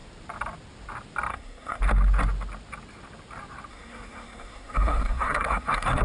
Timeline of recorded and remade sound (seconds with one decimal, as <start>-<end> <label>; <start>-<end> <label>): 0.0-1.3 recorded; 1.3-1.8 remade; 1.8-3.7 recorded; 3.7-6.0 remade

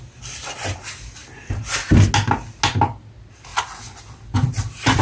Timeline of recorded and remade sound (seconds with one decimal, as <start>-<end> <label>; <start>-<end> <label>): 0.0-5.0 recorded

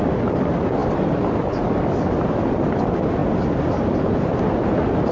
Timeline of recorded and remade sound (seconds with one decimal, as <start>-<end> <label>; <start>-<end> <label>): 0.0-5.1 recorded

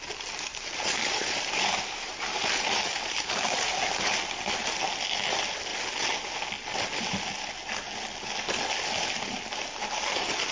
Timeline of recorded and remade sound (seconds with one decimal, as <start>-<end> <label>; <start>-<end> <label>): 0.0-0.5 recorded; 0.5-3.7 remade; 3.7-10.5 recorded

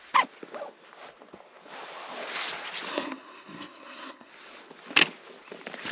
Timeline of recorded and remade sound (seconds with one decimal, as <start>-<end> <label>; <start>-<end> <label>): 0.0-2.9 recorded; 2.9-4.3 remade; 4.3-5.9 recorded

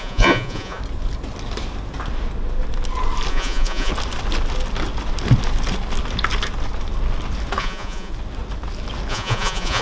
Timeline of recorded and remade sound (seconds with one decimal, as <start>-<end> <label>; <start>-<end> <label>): 0.0-0.8 remade; 0.8-3.3 recorded; 3.3-3.9 remade; 3.9-7.6 recorded; 7.6-8.1 remade; 8.1-9.1 recorded; 9.1-9.8 remade